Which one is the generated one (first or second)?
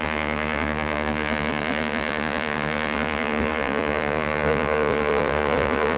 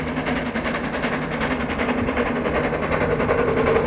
first